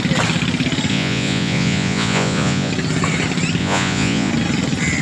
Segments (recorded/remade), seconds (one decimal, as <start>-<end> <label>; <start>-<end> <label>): 0.0-0.9 recorded; 0.9-2.7 remade; 2.7-3.6 recorded; 3.6-4.3 remade; 4.3-5.0 recorded